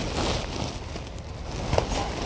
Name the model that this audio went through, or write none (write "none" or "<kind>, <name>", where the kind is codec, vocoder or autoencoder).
none